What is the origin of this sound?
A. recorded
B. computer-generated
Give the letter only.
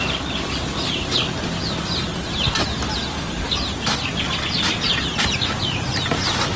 A